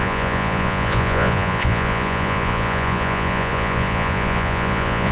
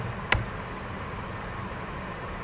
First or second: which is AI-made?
first